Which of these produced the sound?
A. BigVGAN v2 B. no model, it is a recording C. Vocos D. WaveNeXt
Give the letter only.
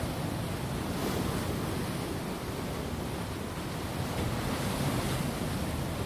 B